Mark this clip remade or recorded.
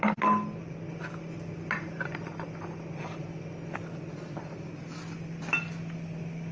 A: recorded